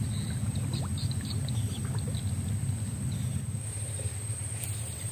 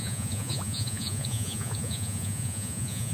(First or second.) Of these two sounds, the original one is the first